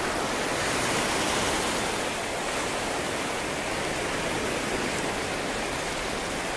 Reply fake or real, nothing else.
real